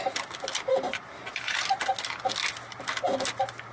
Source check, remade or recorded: recorded